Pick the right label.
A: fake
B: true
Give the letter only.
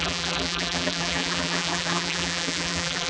A